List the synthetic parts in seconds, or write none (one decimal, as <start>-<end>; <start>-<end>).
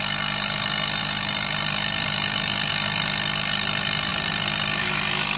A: 1.0-2.7; 4.1-5.4